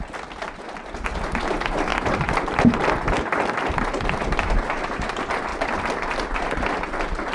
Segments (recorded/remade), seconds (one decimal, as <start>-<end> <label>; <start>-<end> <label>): 0.0-7.3 recorded